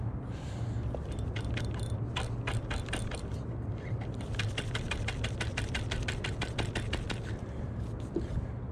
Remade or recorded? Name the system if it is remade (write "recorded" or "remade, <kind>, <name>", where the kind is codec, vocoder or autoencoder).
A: recorded